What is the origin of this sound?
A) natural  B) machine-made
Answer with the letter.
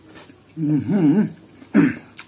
A